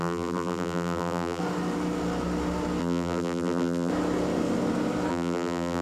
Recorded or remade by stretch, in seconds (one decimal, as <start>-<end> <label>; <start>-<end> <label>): 0.0-1.4 remade; 1.4-2.8 recorded; 2.8-3.9 remade; 3.9-5.1 recorded; 5.1-5.8 remade